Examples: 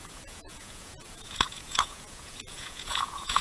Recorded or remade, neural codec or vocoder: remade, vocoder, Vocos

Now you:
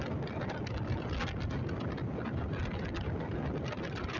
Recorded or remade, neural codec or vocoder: recorded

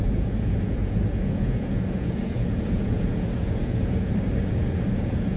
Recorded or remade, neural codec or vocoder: remade, vocoder, Vocos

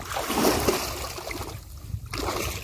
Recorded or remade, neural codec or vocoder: recorded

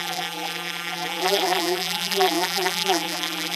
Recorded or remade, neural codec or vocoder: remade, vocoder, BigVGAN v2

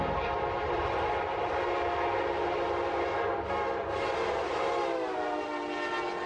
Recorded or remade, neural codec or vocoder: recorded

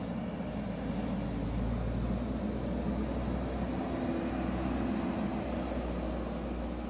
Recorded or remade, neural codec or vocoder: recorded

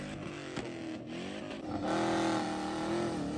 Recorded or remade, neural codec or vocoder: recorded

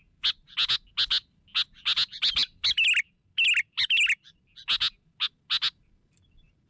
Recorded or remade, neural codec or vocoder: recorded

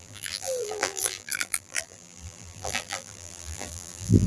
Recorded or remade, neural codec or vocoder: remade, vocoder, BigVGAN v2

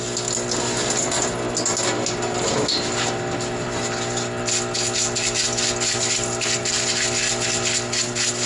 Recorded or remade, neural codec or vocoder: recorded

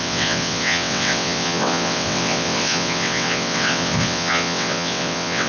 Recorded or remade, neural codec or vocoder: remade, vocoder, WaveNeXt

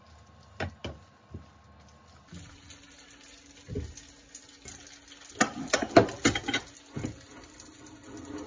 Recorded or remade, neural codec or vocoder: recorded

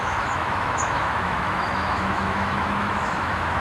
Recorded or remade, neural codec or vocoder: remade, autoencoder, DAC-VAE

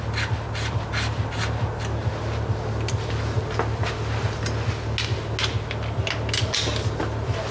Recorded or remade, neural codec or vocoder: recorded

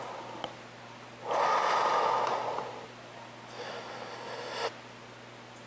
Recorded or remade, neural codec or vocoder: recorded